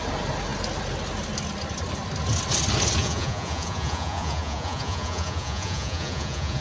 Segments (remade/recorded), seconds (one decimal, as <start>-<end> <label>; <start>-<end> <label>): 0.0-3.0 recorded; 3.0-6.6 remade